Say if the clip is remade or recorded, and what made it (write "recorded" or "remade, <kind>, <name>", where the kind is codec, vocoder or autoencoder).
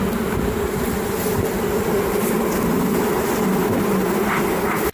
recorded